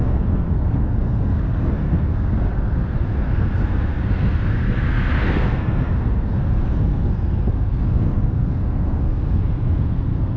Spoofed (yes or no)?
yes